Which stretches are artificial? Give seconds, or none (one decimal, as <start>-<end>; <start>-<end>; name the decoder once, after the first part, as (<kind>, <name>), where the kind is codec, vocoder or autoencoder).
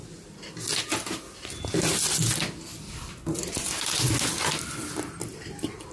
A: none